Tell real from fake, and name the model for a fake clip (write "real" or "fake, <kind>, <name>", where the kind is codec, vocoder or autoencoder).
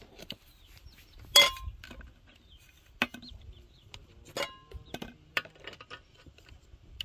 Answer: real